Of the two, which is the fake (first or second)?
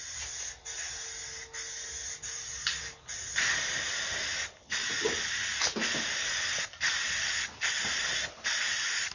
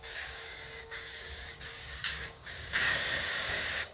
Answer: second